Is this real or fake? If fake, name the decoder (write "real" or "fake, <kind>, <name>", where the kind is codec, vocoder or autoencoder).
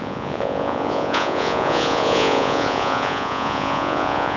fake, vocoder, Vocos